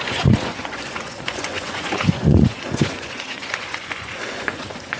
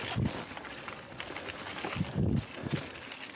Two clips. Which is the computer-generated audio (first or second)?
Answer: first